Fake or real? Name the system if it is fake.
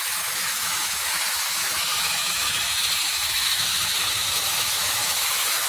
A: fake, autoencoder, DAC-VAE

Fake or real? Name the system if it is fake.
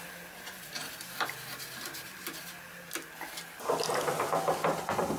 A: real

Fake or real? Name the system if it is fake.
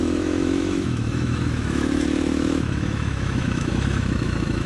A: fake, autoencoder, DAC-VAE